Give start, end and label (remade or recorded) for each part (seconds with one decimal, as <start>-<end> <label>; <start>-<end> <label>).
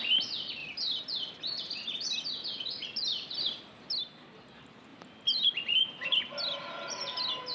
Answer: 0.0-0.6 recorded; 0.6-4.0 remade; 4.0-4.9 recorded; 4.9-5.5 remade; 5.5-7.5 recorded